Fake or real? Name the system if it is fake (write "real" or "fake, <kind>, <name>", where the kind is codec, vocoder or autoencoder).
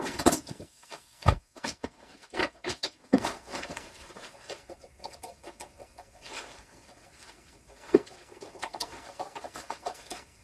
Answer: fake, codec, SNAC